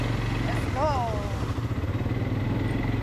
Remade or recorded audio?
recorded